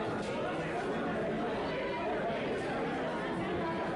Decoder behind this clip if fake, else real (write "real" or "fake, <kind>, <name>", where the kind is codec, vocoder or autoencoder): real